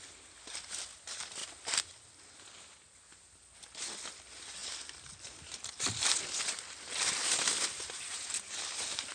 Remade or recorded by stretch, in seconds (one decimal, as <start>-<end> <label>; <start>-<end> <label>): 0.0-9.1 recorded